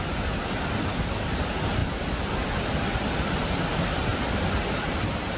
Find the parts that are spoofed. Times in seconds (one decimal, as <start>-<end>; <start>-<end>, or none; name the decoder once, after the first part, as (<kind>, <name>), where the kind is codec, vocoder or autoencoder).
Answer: none